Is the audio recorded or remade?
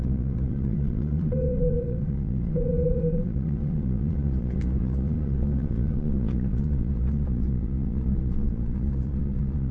remade